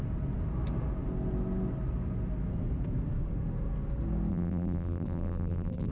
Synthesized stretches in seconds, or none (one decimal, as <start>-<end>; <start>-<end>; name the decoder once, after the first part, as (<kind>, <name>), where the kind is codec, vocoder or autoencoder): 4.3-5.9 (vocoder, BigVGAN v2)